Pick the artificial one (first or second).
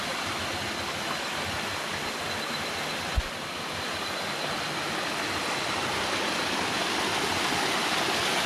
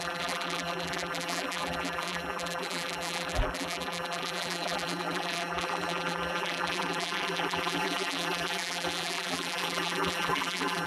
second